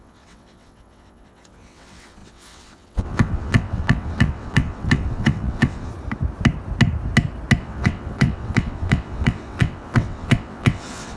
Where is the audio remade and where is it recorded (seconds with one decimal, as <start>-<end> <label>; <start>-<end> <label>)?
0.0-5.9 remade; 5.9-7.6 recorded; 7.6-11.2 remade